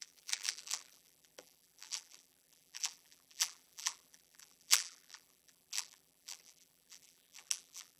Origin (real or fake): fake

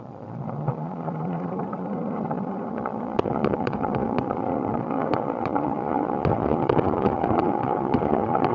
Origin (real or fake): fake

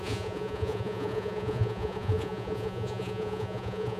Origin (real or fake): fake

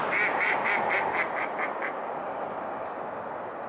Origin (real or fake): real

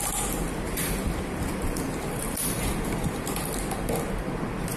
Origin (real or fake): real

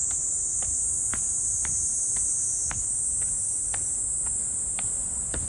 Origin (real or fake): real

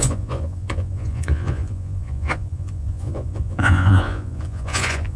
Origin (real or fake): fake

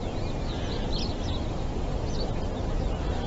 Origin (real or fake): real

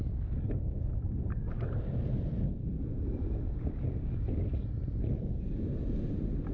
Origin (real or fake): real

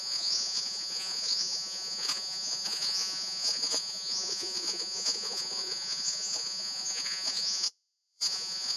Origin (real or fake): fake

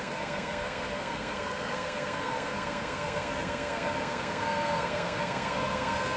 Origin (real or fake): fake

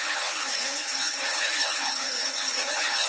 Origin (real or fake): fake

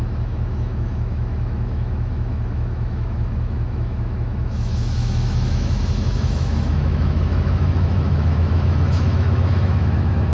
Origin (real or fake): fake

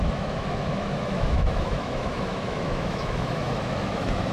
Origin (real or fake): fake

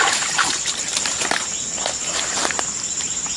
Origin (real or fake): fake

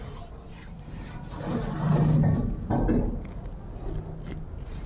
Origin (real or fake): real